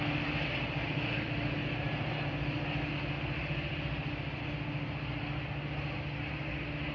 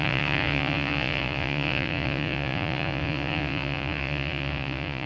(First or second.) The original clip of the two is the first